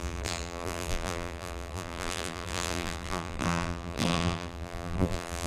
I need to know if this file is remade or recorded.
remade